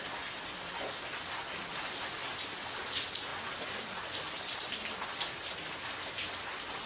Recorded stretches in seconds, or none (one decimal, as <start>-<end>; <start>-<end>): 0.0-6.9

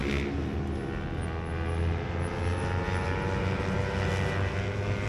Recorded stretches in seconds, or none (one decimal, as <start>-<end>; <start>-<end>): 0.0-5.1

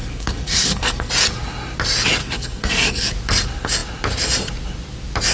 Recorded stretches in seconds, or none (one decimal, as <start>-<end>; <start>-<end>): 1.1-2.2; 3.1-5.3